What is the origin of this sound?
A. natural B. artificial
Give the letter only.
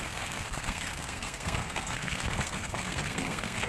B